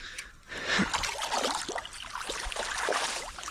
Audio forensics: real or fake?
real